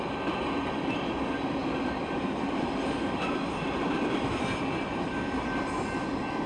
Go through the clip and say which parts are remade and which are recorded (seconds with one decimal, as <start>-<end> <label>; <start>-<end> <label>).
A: 0.0-6.5 recorded